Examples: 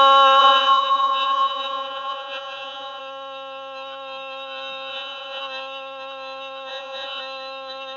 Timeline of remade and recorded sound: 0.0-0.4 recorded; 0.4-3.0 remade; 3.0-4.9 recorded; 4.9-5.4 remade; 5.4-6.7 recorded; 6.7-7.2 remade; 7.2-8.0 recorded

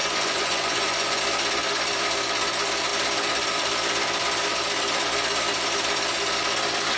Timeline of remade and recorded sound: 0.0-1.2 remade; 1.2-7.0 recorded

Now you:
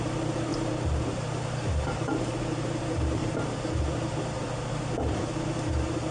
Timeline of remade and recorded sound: 0.0-6.1 recorded

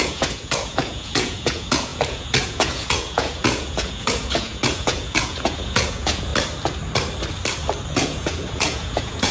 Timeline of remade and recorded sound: 0.0-6.3 remade; 6.3-7.9 recorded; 7.9-9.3 remade

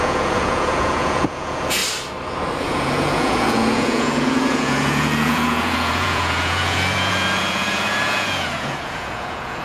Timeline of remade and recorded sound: 0.0-1.8 remade; 1.8-2.6 recorded; 2.6-9.6 remade